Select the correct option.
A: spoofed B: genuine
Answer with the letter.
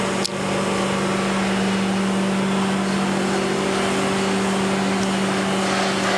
B